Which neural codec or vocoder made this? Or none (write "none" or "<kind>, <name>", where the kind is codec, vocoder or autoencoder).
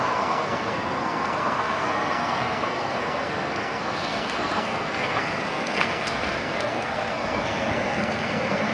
codec, SNAC